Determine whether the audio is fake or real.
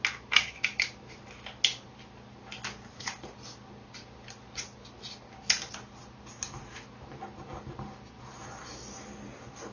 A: real